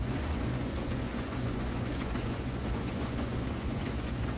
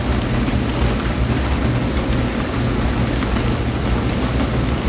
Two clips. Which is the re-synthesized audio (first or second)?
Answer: first